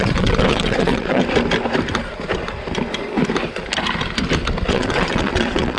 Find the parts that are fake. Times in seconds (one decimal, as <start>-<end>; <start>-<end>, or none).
0.0-1.2; 4.7-5.8